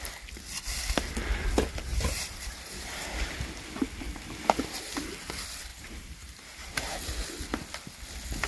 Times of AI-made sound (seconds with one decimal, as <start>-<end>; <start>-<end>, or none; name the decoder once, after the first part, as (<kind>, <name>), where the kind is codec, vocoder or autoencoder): 1.9-3.0 (vocoder, BigVGAN v2); 5.7-7.0